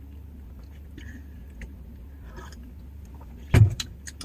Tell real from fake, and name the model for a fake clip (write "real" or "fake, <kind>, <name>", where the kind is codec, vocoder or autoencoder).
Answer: real